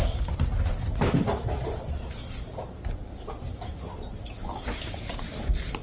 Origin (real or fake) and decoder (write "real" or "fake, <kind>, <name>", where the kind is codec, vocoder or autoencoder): real